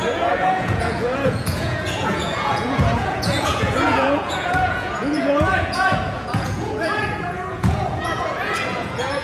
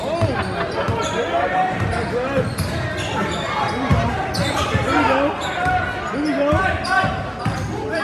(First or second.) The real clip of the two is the second